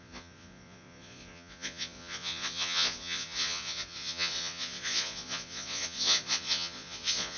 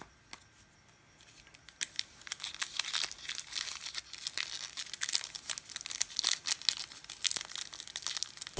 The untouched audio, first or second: second